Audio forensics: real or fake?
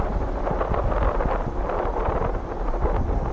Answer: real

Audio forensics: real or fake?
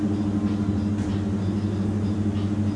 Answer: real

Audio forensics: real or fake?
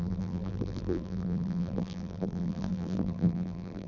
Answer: fake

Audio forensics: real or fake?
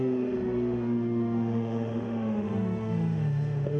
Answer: fake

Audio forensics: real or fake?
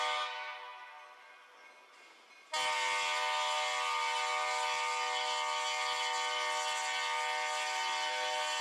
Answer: real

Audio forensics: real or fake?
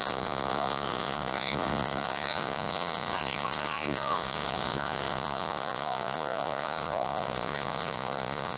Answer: fake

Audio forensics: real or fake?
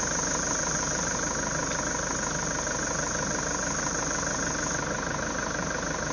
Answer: real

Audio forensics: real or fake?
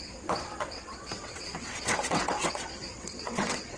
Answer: fake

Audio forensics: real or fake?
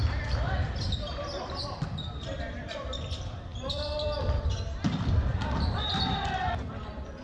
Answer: fake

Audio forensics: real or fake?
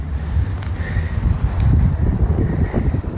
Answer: real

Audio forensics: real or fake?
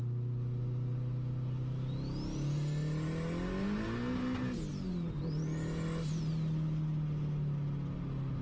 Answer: real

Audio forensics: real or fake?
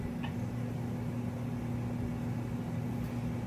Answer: real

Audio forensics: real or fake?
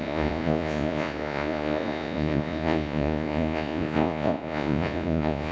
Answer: fake